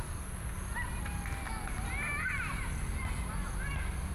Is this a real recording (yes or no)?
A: yes